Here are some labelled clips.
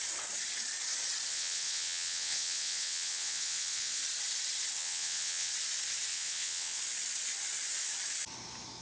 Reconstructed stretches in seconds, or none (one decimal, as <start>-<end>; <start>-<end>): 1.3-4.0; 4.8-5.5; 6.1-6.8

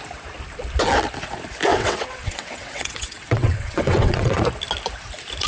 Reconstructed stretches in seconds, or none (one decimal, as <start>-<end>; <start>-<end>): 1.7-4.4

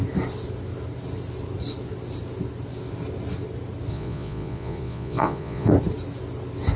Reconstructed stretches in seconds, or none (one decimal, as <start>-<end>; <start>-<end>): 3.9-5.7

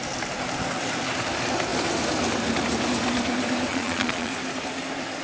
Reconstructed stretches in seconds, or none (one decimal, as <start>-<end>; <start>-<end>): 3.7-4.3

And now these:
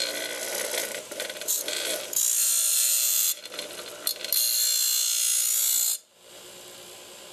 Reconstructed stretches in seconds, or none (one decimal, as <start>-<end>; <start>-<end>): 0.8-2.2; 2.7-3.4

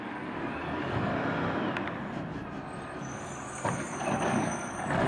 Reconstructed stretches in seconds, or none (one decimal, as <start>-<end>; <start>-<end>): 0.0-1.1; 3.0-5.1

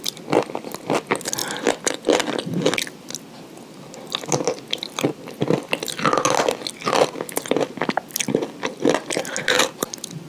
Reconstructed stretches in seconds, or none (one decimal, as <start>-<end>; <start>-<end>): none